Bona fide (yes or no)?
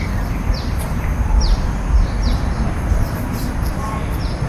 yes